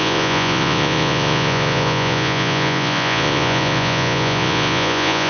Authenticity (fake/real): fake